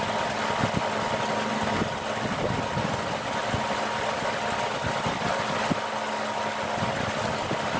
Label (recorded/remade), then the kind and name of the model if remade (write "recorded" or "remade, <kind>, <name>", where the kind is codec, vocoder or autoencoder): recorded